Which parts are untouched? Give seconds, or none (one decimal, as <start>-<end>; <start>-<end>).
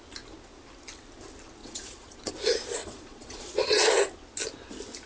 0.0-1.6; 2.3-2.8; 3.9-5.1